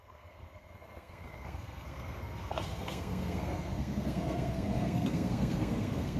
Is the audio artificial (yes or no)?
yes